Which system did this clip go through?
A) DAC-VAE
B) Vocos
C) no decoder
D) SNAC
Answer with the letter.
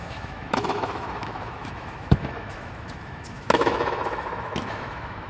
A